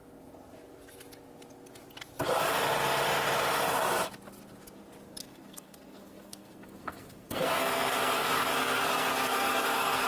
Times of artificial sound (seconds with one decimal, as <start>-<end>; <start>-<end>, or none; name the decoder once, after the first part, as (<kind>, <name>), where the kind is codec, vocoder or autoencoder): 5.2-10.1 (codec, SNAC)